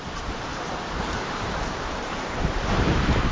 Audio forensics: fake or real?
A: fake